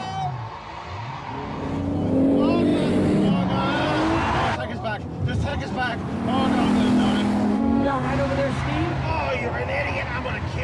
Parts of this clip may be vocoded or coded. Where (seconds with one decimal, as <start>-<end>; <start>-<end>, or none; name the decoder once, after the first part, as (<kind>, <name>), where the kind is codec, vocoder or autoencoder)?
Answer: 7.5-8.1 (autoencoder, DAC-VAE)